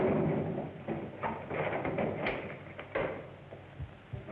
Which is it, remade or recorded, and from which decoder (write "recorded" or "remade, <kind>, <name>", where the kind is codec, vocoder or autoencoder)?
recorded